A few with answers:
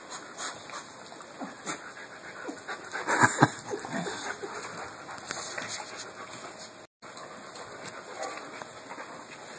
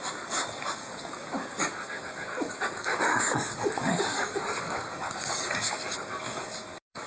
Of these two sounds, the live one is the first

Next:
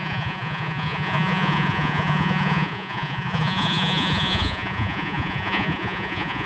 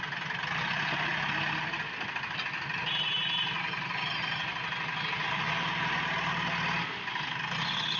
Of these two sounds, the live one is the second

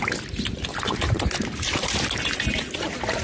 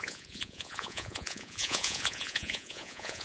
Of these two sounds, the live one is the first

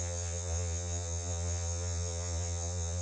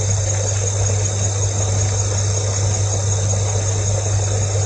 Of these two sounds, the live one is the second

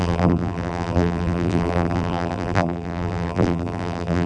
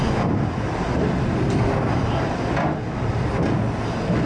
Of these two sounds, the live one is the second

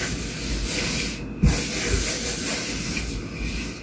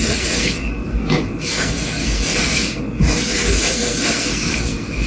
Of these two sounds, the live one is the first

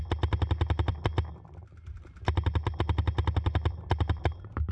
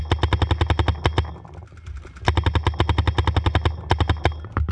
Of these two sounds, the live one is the second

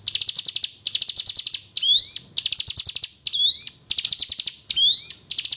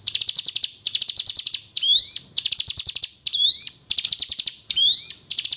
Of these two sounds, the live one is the first